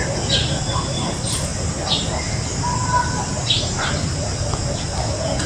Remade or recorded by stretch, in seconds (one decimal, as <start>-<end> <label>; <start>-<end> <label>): 0.0-5.5 recorded

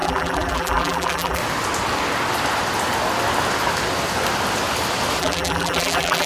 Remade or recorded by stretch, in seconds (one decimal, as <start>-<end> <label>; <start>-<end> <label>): 0.0-1.4 remade; 1.4-5.2 recorded; 5.2-6.3 remade

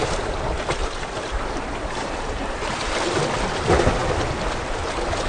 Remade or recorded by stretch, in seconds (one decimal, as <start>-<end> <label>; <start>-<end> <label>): 0.0-0.8 recorded; 0.8-2.8 remade; 2.8-5.3 recorded

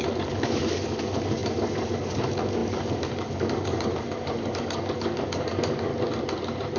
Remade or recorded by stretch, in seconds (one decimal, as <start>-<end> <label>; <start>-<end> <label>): 0.0-5.9 remade; 5.9-6.8 recorded

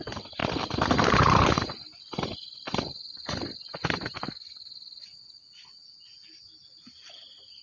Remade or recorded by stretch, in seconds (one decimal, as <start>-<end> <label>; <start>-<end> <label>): 0.0-7.6 recorded